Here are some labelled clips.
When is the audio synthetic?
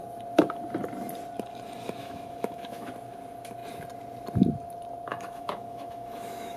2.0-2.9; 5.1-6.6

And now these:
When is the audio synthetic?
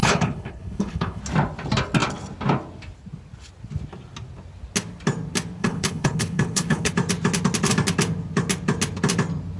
0.0-1.2; 5.6-6.9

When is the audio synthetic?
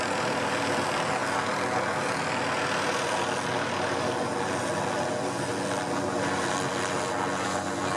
none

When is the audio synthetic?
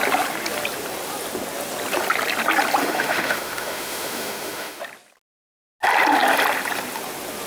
2.8-4.8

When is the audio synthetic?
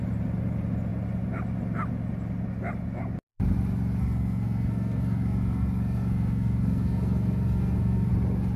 4.0-8.1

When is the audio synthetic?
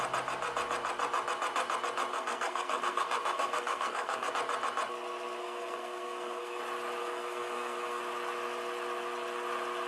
2.1-4.3; 5.4-6.6; 7.0-8.0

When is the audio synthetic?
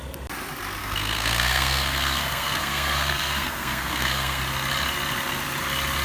0.8-4.4